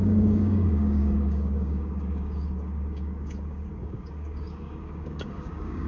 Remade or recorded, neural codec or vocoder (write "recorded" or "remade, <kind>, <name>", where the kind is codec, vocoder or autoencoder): remade, codec, DAC